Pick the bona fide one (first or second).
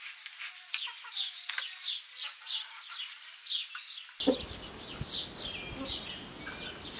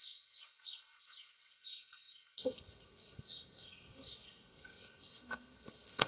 first